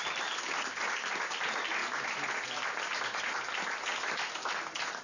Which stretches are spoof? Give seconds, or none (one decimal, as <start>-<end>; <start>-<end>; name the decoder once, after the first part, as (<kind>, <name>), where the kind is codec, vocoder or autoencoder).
none